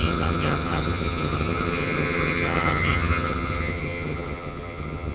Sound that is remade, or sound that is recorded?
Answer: remade